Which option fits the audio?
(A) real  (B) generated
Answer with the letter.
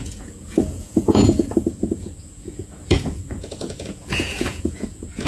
B